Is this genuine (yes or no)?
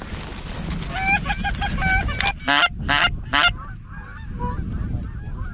yes